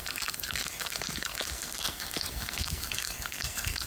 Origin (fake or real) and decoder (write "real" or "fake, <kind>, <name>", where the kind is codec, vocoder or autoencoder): fake, codec, SNAC